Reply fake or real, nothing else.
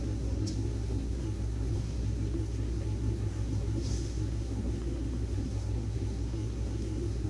fake